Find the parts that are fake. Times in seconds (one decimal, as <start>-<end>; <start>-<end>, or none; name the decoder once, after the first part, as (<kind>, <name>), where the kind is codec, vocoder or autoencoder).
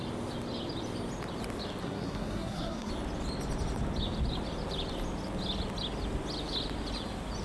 1.8-2.9 (codec, SNAC)